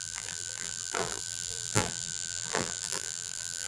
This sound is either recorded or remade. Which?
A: remade